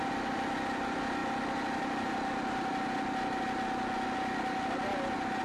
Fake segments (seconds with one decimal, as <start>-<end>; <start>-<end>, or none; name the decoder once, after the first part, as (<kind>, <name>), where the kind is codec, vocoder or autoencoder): none